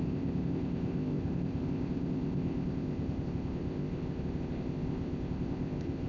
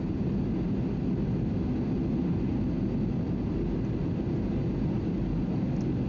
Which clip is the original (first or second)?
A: second